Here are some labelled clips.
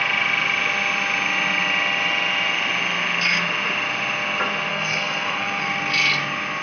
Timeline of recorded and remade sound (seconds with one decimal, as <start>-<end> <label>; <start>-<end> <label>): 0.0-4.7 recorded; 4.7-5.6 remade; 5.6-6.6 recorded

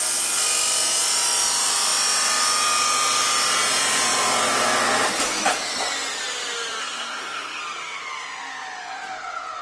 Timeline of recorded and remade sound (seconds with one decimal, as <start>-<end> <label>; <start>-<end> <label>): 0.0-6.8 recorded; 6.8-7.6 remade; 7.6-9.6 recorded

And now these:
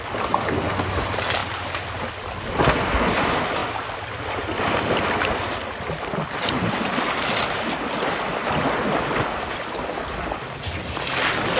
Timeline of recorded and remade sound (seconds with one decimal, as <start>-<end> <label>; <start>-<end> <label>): 0.0-11.6 recorded